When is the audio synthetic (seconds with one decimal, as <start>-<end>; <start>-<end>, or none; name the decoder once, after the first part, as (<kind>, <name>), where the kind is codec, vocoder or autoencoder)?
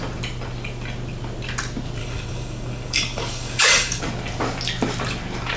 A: 2.0-4.0 (codec, DAC)